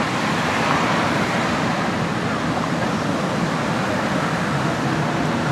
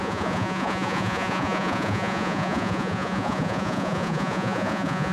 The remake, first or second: second